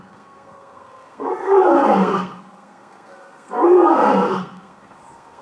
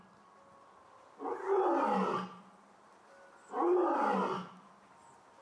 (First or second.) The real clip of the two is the second